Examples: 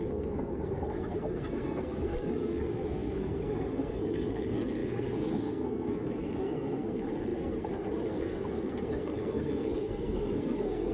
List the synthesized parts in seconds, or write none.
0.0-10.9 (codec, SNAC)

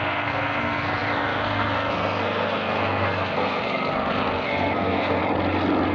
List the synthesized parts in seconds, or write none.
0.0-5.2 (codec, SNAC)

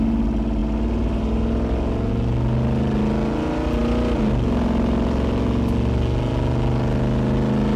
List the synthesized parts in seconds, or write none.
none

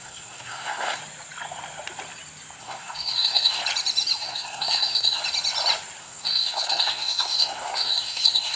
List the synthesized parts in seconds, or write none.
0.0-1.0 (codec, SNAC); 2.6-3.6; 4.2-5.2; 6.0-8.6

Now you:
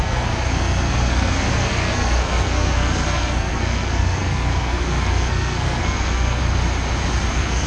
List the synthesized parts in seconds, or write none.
0.0-6.4 (codec, SNAC); 7.3-7.7

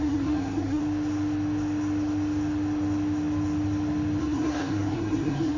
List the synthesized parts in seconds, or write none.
0.0-0.8 (codec, SNAC); 4.2-5.6